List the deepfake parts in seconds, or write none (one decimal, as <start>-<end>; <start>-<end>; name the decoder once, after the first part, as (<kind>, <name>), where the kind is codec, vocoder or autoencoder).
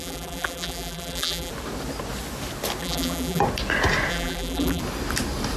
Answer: 0.0-1.5 (vocoder, BigVGAN v2); 2.8-3.4; 4.1-4.8